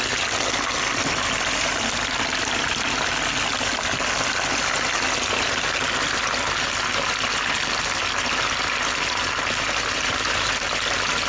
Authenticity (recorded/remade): recorded